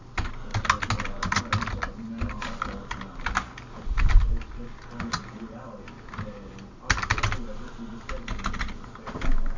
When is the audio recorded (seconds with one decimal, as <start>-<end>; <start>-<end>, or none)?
0.0-9.6